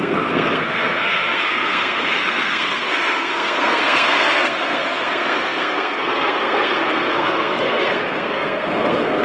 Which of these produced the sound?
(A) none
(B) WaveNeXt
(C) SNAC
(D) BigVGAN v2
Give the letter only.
C